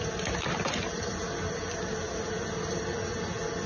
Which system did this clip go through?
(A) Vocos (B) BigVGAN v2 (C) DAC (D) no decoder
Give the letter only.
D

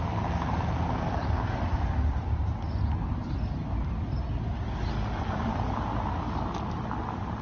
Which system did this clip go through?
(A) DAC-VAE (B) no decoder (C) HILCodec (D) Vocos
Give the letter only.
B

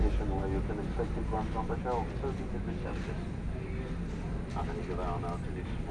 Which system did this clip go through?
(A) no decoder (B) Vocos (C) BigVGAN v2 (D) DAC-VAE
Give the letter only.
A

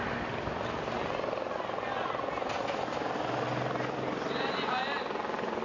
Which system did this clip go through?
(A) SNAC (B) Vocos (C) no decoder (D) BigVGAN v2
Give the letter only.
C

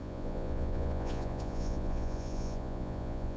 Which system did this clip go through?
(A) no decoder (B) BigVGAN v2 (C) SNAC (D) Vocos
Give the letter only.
D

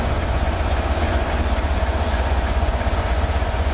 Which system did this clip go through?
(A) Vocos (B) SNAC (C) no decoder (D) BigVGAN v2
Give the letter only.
A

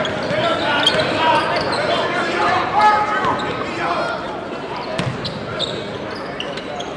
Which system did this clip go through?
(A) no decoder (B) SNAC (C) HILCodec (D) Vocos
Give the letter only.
A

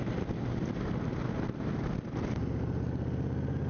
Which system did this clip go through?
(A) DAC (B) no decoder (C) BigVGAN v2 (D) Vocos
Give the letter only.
B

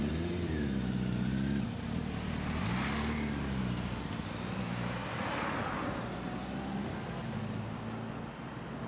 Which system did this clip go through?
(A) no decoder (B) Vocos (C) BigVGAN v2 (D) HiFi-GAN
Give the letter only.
A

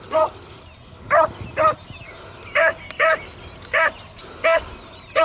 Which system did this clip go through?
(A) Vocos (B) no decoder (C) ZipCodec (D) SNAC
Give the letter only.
B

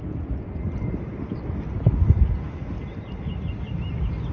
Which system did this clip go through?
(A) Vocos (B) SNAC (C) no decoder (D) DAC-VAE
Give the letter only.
C